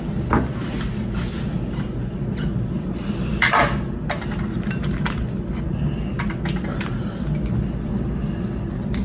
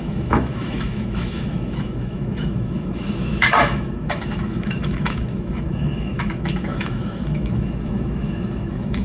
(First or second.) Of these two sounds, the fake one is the second